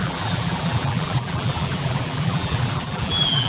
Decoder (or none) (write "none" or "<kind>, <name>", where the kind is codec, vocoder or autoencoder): vocoder, BigVGAN v2